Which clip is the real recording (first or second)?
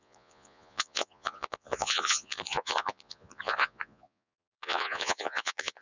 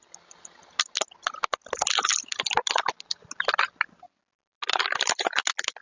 second